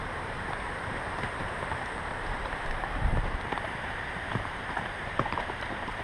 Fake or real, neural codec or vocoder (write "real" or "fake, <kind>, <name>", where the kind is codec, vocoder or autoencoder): fake, vocoder, BigVGAN v2